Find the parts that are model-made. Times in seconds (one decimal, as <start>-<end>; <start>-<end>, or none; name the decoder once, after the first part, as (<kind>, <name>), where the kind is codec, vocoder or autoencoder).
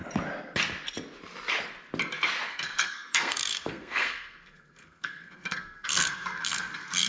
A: 2.5-7.1 (codec, SNAC)